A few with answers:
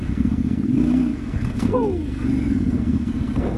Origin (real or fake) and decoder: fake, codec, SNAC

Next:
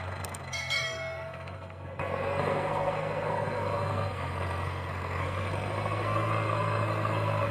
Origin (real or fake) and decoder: fake, codec, SNAC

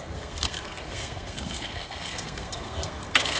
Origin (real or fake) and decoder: fake, codec, SNAC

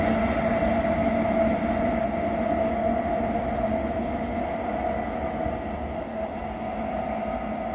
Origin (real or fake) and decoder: real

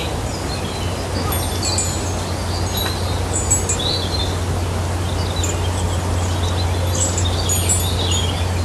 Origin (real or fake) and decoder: real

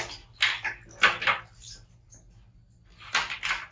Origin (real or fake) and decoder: real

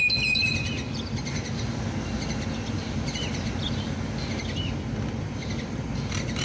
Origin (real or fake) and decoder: real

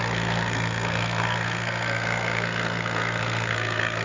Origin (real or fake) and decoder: fake, codec, SNAC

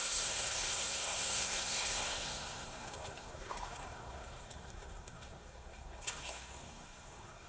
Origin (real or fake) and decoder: fake, codec, SNAC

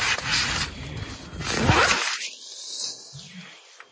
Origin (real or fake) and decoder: real